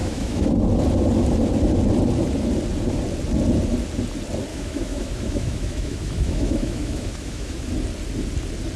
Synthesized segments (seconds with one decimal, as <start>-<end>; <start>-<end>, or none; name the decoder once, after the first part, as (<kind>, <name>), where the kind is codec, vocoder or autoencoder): 0.0-0.5 (autoencoder, DAC-VAE); 4.5-7.7